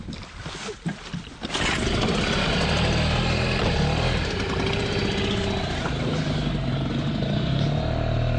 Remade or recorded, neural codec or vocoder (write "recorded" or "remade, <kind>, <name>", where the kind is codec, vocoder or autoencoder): recorded